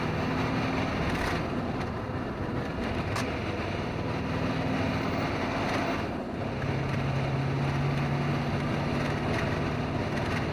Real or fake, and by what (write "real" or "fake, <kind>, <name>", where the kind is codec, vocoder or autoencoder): real